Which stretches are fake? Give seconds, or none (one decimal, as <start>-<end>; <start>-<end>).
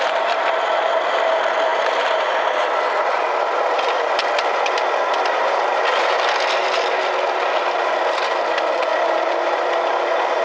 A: 8.9-9.9